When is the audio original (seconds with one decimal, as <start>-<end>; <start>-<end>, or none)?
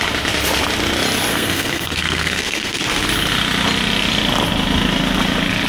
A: 0.0-1.3; 2.8-5.7